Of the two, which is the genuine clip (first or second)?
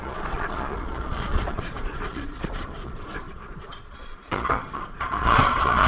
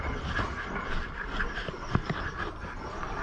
second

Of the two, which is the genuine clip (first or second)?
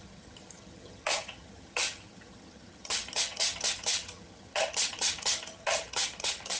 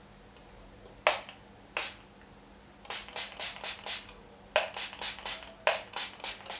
second